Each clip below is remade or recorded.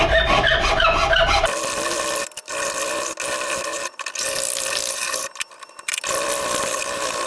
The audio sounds recorded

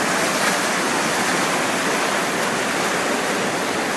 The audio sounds recorded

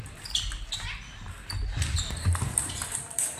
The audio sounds recorded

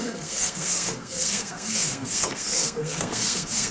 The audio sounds remade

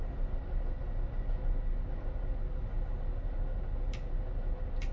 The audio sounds recorded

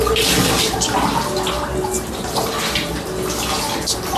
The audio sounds recorded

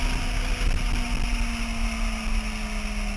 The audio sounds recorded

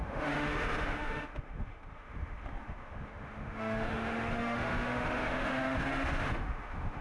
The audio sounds remade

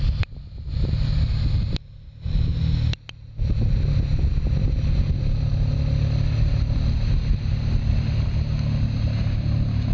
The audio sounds recorded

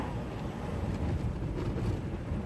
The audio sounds remade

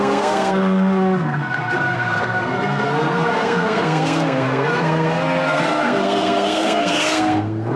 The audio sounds remade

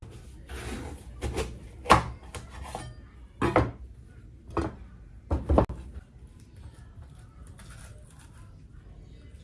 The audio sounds recorded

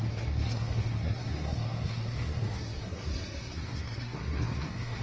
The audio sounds remade